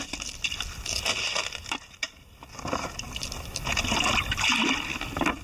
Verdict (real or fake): real